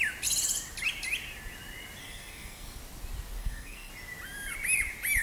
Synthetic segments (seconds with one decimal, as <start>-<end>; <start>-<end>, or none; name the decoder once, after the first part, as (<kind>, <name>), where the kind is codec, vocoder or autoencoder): 2.0-2.8 (codec, SNAC); 3.4-3.9